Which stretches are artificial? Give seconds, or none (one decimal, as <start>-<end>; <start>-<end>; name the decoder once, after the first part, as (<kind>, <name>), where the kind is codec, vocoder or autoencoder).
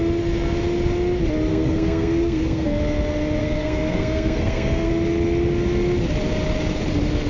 1.5-2.8 (codec, SNAC); 3.4-4.9